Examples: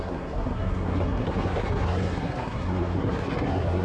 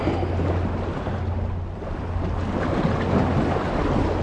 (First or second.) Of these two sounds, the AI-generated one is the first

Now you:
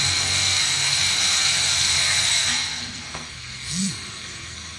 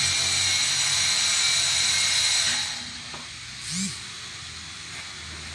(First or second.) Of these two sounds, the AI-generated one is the first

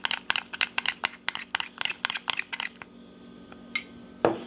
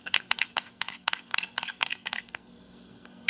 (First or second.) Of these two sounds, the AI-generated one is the second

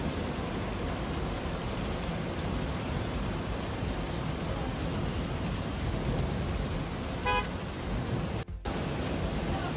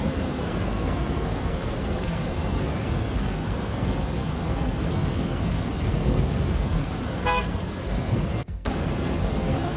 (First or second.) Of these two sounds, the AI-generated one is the second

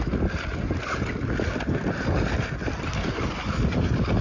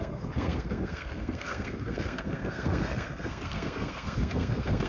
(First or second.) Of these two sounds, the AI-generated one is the second